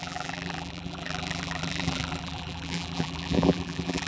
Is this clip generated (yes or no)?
yes